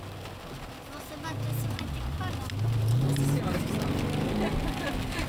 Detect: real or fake real